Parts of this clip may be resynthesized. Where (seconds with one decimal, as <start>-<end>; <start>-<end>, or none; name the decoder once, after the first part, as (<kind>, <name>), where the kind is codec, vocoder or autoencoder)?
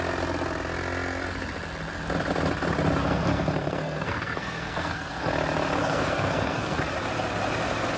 3.0-5.3 (codec, SNAC); 5.8-6.8